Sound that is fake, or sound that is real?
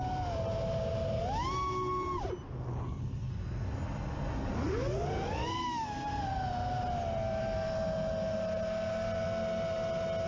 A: real